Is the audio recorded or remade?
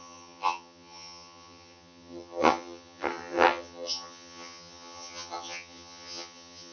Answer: remade